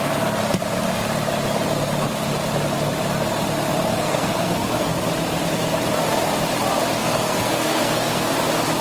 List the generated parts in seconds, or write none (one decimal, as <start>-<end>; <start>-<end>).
3.9-4.9; 7.0-8.3